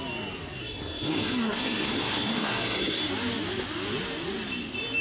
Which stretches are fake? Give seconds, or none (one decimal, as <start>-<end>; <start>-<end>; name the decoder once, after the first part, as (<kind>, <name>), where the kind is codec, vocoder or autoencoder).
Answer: 0.6-3.0 (codec, SNAC)